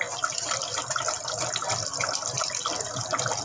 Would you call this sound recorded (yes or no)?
yes